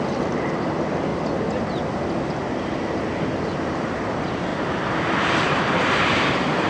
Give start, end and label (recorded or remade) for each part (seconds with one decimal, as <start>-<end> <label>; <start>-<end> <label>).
0.0-1.1 remade; 1.1-2.2 recorded; 2.2-4.5 remade; 4.5-5.6 recorded; 5.6-6.7 remade